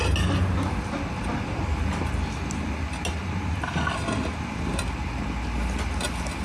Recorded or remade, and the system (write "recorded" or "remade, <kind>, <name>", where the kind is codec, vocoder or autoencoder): recorded